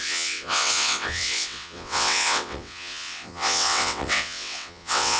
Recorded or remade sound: remade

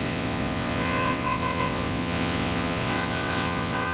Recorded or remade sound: remade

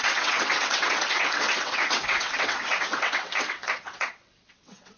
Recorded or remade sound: remade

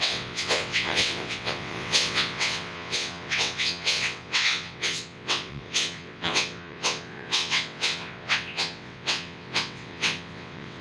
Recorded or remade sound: remade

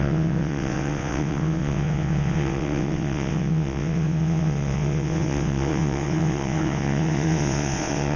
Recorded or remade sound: remade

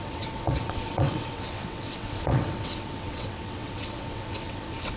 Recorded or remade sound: remade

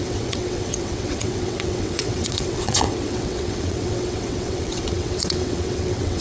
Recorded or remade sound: remade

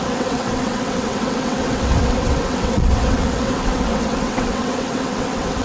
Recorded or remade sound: remade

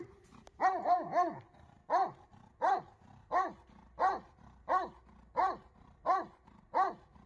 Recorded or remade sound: recorded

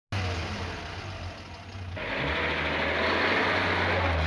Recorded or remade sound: recorded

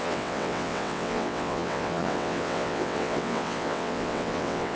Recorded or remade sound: remade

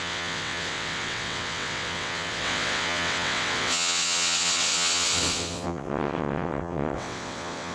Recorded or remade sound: remade